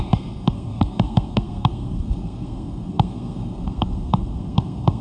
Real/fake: fake